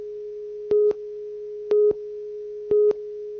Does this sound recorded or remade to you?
recorded